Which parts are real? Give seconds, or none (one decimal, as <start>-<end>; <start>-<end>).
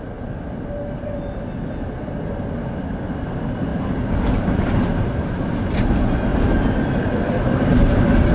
0.0-8.3